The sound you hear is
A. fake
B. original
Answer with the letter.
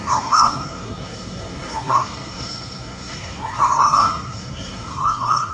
A